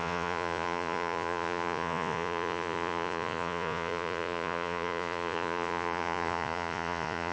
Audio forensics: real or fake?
fake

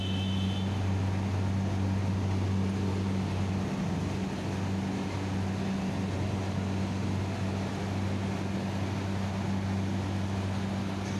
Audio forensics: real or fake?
real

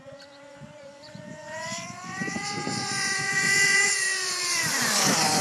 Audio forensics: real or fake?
fake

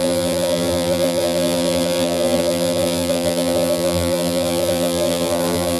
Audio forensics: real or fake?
fake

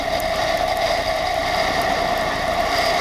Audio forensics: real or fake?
real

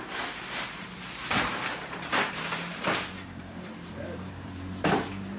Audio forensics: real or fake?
fake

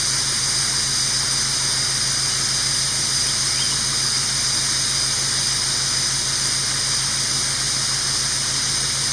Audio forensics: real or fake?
real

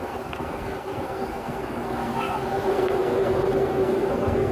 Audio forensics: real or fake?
fake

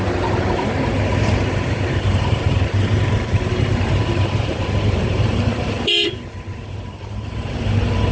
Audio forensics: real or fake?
fake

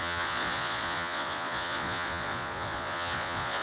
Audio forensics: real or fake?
fake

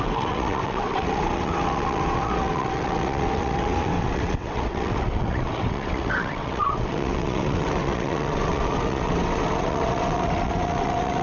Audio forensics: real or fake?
fake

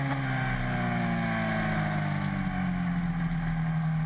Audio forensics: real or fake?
real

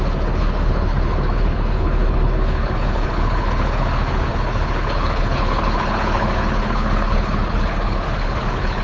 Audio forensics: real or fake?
fake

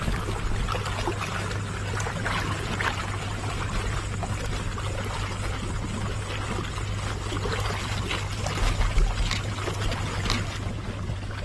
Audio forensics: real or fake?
real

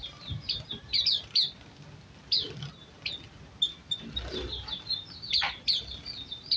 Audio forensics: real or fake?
real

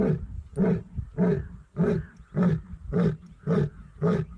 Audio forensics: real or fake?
real